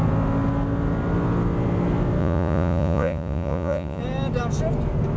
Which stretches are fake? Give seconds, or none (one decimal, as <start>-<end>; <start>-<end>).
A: 2.2-4.0